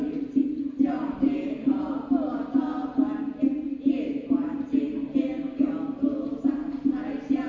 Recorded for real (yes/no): yes